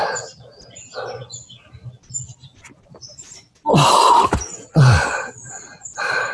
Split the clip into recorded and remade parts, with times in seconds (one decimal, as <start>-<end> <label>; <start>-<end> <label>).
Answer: 0.0-6.3 recorded